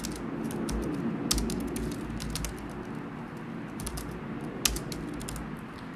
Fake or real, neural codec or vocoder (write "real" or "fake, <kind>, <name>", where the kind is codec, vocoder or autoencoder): real